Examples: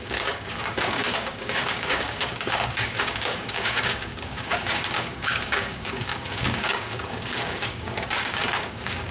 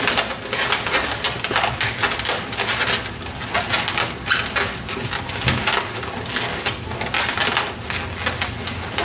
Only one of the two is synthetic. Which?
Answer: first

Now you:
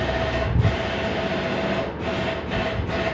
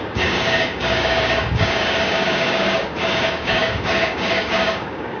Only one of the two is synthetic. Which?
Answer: second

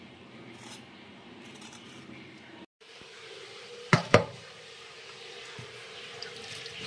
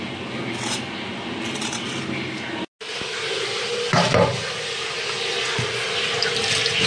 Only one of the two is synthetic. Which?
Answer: first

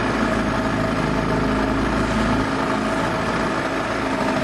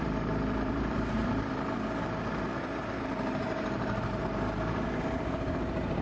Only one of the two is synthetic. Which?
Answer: second